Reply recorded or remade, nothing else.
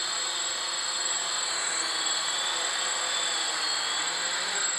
recorded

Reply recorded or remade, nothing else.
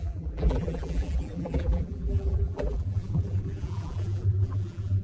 remade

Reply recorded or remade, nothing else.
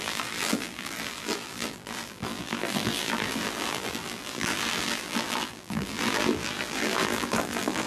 remade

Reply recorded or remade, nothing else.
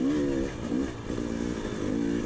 recorded